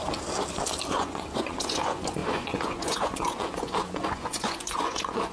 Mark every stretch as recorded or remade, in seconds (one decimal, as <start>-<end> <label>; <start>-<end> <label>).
0.0-0.9 recorded; 0.9-5.3 remade